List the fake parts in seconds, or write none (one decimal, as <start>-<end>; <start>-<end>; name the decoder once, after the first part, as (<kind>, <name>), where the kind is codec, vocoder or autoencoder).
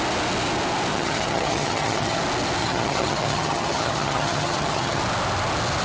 0.9-2.2 (vocoder, HiFi-GAN); 2.6-5.0